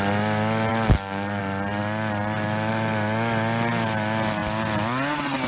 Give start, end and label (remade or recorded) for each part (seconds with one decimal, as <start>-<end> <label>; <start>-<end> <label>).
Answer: 0.0-0.7 recorded; 0.7-1.4 remade; 1.4-5.5 recorded